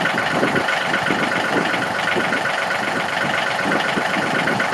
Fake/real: fake